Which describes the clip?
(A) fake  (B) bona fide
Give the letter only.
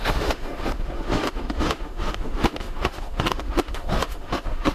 A